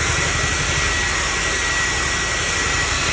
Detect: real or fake real